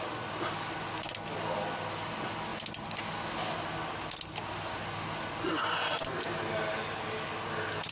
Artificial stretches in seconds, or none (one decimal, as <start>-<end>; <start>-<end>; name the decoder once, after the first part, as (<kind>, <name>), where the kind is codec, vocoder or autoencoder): none

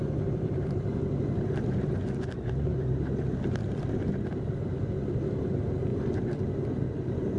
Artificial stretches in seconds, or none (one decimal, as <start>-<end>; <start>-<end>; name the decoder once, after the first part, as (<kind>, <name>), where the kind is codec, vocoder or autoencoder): 0.0-7.4 (vocoder, BigVGAN v2)

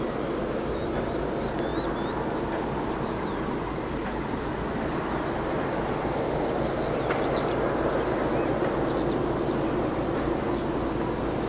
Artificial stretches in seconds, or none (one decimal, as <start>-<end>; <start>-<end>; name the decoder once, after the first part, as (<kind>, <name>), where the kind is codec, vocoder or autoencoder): 1.7-4.5 (vocoder, BigVGAN v2)

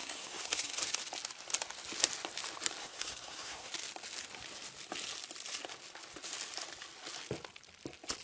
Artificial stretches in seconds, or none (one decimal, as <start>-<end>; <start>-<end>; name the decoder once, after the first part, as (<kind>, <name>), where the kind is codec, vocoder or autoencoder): 0.0-0.8 (codec, SNAC); 2.8-3.7

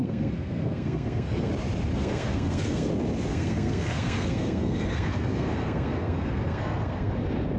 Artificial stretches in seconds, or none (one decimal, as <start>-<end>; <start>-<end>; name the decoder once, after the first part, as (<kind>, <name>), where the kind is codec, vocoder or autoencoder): 0.0-1.5 (codec, SNAC); 2.0-2.9; 3.3-7.1

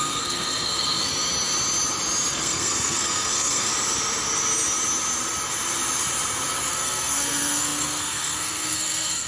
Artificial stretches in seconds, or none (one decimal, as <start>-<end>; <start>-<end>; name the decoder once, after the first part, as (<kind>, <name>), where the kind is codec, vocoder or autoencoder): 0.0-1.1 (codec, SNAC); 2.3-3.7; 6.7-9.3

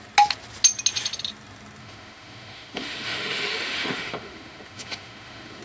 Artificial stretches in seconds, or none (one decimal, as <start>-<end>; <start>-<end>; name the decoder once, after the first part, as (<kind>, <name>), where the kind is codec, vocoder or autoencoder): 1.8-5.6 (autoencoder, DAC-VAE)

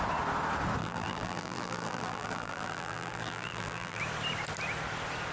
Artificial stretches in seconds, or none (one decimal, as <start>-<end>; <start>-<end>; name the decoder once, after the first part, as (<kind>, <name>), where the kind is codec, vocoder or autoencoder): 0.8-4.0 (vocoder, BigVGAN v2)